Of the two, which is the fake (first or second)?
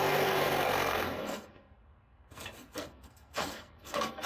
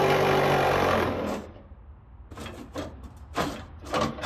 first